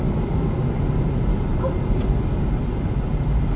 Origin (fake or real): real